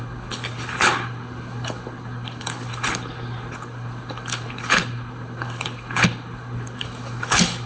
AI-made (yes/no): yes